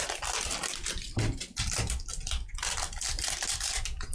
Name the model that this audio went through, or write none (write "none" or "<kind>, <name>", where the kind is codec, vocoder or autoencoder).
none